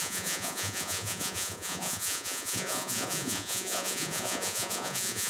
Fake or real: fake